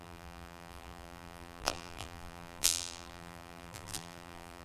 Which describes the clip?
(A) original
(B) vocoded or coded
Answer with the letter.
B